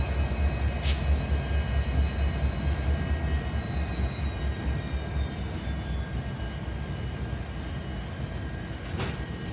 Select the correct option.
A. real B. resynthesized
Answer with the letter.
A